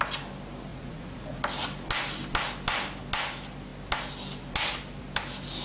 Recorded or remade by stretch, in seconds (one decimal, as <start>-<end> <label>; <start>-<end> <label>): 0.0-0.7 recorded; 0.7-1.4 remade; 1.4-5.6 recorded